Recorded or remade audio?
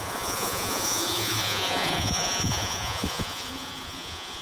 remade